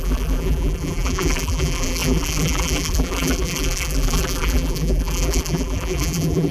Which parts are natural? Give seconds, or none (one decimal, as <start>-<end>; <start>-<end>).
none